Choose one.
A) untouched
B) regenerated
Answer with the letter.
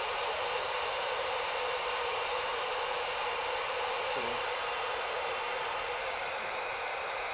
B